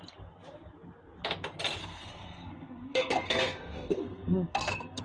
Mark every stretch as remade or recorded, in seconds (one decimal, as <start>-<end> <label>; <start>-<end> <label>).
0.0-1.8 recorded; 1.8-5.0 remade